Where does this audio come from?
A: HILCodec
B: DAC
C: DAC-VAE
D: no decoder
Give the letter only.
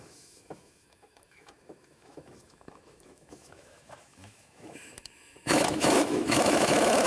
C